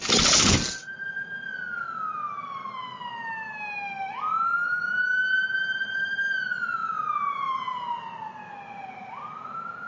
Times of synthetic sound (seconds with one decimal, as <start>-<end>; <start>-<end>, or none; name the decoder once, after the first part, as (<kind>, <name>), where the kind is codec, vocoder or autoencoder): none